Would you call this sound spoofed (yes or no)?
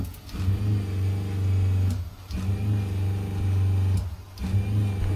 no